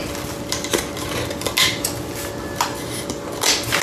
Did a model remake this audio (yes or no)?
no